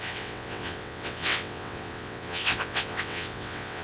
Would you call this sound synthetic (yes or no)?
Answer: yes